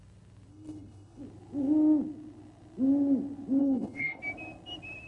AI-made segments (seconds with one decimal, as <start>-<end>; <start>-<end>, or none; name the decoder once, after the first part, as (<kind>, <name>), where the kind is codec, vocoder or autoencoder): 0.5-1.2 (codec, HILCodec); 3.6-4.2